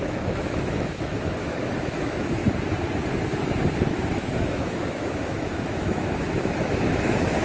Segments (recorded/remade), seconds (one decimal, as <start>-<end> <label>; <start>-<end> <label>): 0.0-2.4 remade; 2.4-4.1 recorded; 4.1-7.4 remade